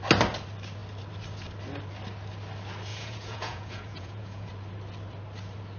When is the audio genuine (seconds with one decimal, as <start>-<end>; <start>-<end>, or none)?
0.0-2.9; 4.5-5.8